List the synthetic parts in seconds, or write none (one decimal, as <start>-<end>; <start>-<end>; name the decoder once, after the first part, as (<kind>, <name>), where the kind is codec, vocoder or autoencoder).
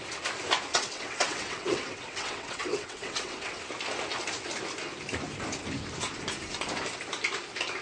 0.7-3.6 (vocoder, WaveNeXt)